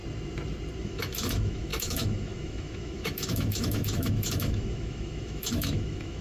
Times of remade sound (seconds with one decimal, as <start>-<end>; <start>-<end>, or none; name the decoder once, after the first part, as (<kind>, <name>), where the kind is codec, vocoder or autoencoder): 0.8-6.2 (autoencoder, DAC-VAE)